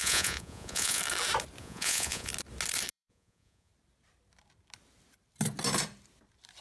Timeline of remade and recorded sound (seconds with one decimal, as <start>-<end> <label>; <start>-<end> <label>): 0.0-1.0 remade; 1.0-1.6 recorded; 1.6-2.3 remade; 2.3-2.9 recorded; 2.9-3.7 remade; 3.7-6.6 recorded